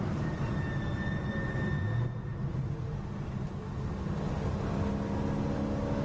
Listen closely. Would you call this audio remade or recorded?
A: recorded